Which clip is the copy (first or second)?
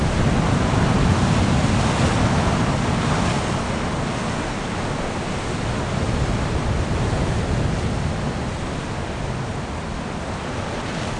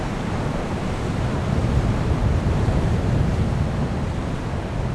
second